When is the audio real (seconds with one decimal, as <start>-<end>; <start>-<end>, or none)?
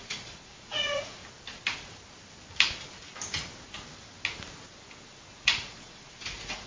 1.2-5.0